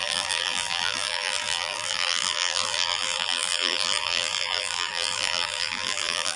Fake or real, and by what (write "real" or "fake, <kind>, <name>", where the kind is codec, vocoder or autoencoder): fake, vocoder, BigVGAN v2